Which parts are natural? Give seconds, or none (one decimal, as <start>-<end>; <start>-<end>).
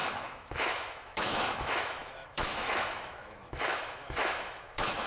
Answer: none